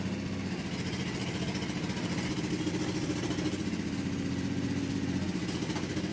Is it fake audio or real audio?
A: real